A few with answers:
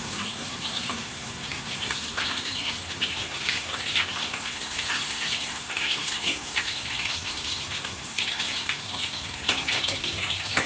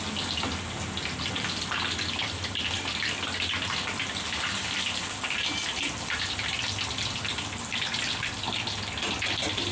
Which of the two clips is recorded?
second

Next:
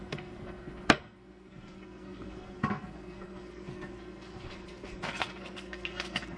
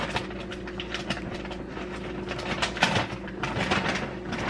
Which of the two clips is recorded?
second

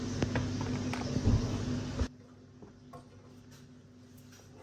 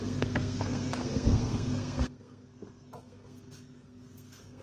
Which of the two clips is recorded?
first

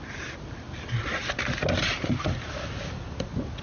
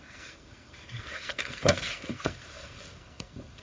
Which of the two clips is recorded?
first